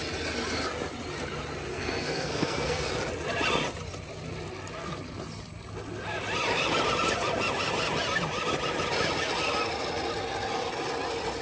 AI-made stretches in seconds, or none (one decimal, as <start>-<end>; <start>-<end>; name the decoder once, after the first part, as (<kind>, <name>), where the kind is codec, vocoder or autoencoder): 1.7-2.9 (codec, SNAC)